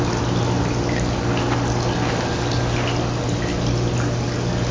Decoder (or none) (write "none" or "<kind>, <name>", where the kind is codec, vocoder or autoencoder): none